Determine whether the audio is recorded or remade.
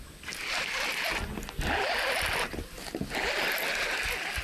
recorded